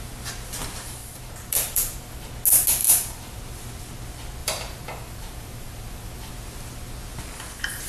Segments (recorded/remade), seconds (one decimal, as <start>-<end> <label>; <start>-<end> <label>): 0.0-1.0 recorded; 1.0-2.3 remade; 2.3-2.8 recorded; 2.8-3.4 remade; 3.4-4.4 recorded; 4.4-6.3 remade; 6.3-7.9 recorded